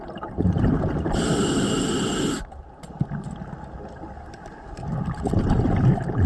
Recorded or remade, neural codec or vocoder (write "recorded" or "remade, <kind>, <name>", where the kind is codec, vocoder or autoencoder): recorded